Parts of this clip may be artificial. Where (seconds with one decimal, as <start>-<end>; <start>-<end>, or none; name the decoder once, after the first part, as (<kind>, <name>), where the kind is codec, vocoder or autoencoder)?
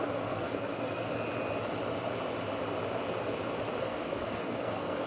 0.0-1.1 (codec, SNAC); 3.8-5.1